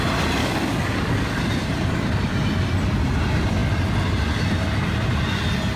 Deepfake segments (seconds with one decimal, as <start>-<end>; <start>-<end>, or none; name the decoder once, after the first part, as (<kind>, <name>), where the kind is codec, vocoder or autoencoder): 0.4-1.4 (codec, DAC)

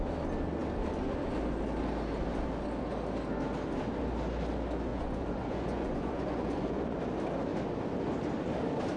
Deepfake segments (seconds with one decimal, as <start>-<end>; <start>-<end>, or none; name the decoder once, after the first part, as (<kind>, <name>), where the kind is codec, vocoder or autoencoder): 4.9-7.0 (vocoder, Vocos)